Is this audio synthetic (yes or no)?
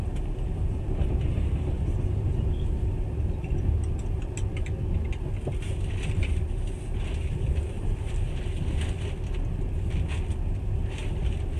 no